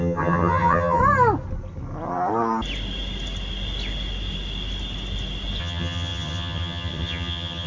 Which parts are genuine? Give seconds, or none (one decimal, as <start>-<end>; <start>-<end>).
1.0-5.6